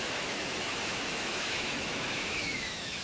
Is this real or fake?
fake